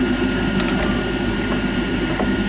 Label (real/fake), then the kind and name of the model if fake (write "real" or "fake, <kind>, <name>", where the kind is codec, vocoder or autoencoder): fake, vocoder, BigVGAN v2